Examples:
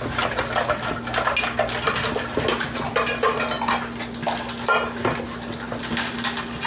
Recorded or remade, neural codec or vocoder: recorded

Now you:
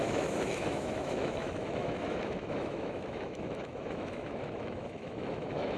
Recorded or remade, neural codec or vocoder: remade, autoencoder, DAC-VAE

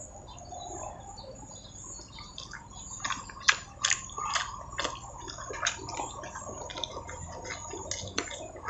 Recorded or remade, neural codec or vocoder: recorded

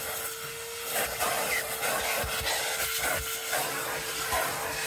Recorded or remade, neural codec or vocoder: recorded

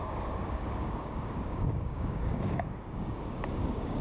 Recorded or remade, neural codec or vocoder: remade, codec, DAC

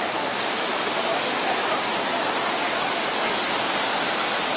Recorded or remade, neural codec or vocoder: recorded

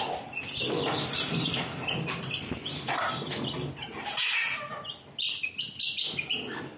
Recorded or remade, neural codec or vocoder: recorded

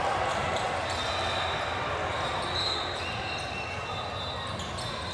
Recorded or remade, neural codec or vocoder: recorded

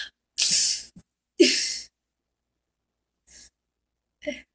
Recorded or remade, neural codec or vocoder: recorded